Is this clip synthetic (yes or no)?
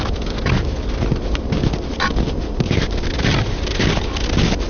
no